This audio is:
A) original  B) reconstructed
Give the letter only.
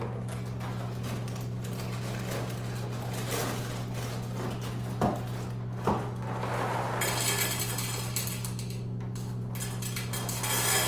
A